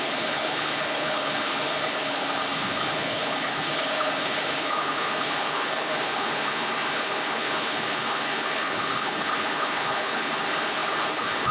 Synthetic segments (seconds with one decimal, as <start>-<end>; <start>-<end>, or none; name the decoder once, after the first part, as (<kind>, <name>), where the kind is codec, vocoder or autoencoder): 0.0-11.5 (codec, HILCodec)